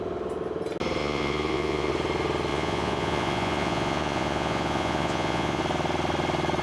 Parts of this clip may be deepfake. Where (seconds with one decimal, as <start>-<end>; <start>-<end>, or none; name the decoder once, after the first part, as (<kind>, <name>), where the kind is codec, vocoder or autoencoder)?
1.0-1.9 (vocoder, Vocos); 2.5-5.6